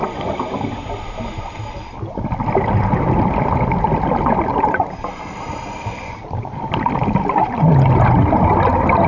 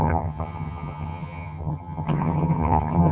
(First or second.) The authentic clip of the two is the first